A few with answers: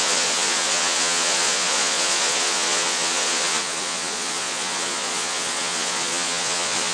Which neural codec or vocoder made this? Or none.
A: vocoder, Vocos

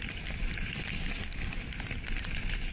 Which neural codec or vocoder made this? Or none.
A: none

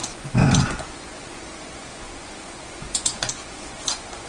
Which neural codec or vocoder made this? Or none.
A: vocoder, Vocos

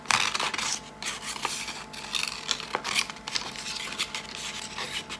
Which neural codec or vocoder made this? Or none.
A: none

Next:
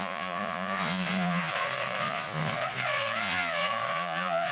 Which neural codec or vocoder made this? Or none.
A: vocoder, Vocos